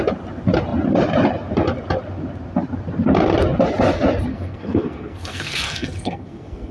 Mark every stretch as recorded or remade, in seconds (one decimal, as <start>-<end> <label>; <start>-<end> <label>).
0.0-4.3 recorded; 4.3-6.7 remade